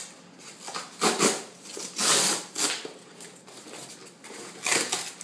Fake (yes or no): no